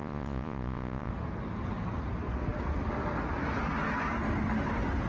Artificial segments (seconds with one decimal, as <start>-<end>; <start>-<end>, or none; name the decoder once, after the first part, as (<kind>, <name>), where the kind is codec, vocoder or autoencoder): 0.0-1.1 (vocoder, Vocos)

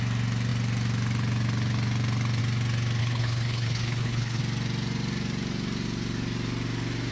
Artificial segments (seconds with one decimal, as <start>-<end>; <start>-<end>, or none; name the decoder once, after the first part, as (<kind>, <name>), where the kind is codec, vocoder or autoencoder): 3.0-4.4 (codec, HILCodec)